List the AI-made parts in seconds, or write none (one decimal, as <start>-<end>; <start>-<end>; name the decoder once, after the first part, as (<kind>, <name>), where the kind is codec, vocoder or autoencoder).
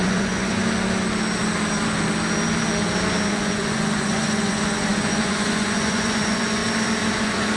0.0-0.6 (vocoder, Vocos); 3.3-6.6; 7.1-7.6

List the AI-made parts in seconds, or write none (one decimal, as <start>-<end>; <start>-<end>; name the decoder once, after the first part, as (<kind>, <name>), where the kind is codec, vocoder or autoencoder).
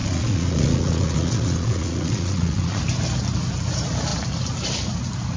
0.0-2.8 (vocoder, Vocos)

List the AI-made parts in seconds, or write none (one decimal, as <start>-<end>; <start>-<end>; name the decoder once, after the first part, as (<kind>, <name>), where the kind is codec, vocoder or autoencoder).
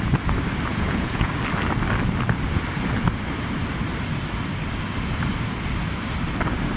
0.7-1.3 (vocoder, Vocos)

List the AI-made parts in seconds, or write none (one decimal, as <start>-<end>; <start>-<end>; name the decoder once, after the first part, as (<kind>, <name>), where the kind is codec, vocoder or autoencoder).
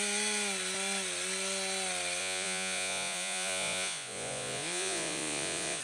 2.2-5.8 (vocoder, Vocos)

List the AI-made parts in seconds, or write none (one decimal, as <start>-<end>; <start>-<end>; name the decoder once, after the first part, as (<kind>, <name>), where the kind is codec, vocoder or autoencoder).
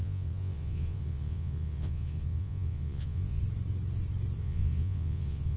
0.0-3.4 (vocoder, Vocos); 4.4-5.6